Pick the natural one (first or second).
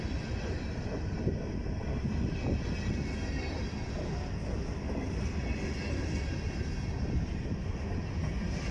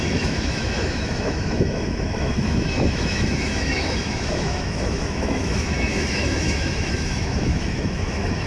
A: first